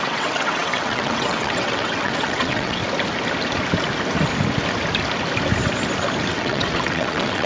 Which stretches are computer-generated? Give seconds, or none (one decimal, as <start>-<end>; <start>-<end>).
0.0-2.8; 6.3-7.5